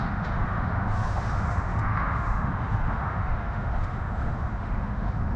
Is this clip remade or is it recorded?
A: remade